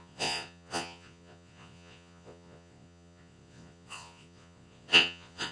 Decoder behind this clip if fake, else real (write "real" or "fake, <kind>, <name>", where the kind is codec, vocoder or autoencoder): fake, vocoder, Vocos